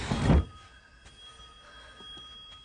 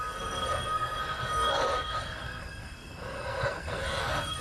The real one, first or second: first